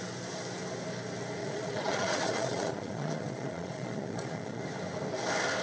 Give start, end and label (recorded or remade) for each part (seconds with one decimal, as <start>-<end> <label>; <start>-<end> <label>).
0.0-1.4 recorded; 1.4-4.6 remade; 4.6-5.6 recorded